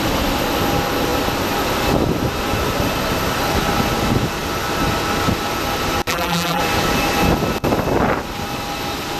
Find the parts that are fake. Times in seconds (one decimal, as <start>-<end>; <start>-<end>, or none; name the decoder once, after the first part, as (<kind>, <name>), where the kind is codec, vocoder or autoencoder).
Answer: 6.1-6.6 (vocoder, BigVGAN v2)

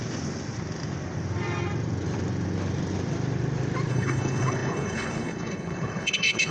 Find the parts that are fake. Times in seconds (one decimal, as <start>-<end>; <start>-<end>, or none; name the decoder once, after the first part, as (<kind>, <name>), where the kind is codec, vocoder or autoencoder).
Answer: 3.9-6.5 (codec, HILCodec)

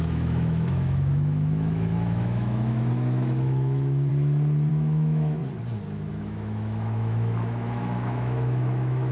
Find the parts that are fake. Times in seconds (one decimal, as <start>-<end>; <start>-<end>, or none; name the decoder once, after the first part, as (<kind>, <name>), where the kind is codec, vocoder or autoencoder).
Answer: 0.0-4.1 (autoencoder, DAC-VAE); 4.7-5.4; 6.1-9.1